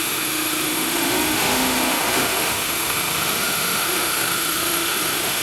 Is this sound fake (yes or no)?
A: yes